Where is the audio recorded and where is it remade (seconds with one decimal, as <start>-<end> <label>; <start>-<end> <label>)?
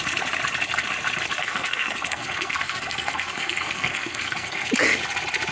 0.0-1.4 recorded; 1.4-4.7 remade; 4.7-5.5 recorded